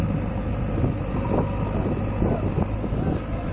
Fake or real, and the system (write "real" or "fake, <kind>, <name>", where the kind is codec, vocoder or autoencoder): real